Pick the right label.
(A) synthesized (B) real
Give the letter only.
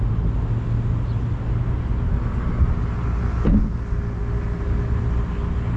B